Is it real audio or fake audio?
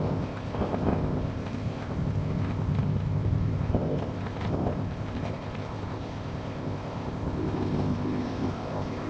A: fake